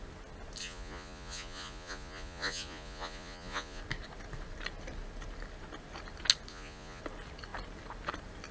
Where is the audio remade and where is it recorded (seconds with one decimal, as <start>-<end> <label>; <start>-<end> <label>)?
0.0-0.6 recorded; 0.6-3.8 remade; 3.8-6.5 recorded; 6.5-7.0 remade; 7.0-8.5 recorded